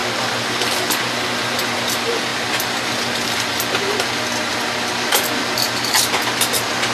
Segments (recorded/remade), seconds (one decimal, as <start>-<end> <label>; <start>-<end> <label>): 0.0-6.9 recorded